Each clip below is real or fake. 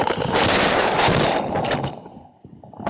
real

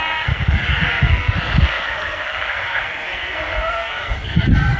fake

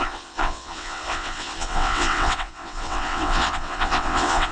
fake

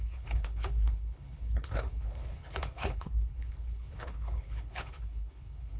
fake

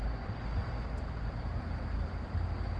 real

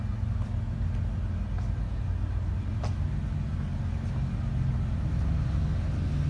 real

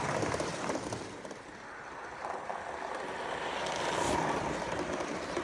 real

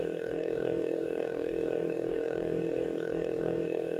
fake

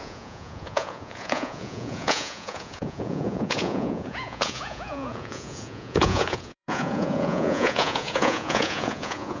fake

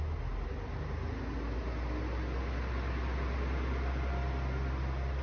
real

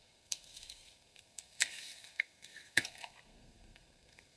fake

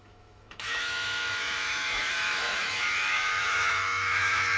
fake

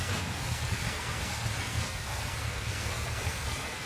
fake